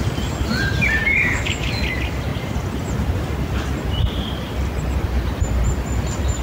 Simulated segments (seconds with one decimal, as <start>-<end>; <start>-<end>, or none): 1.0-1.7